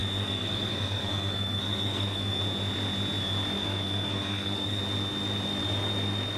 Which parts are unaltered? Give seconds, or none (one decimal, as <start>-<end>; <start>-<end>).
2.4-3.6; 4.8-6.4